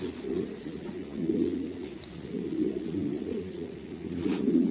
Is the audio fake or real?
fake